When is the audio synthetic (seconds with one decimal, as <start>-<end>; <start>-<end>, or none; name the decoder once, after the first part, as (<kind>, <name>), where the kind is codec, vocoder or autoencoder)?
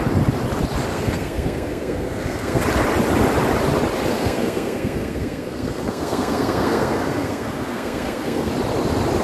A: 0.9-2.6 (codec, SNAC); 4.1-8.5